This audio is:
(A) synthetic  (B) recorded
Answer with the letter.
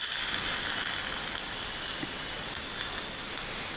B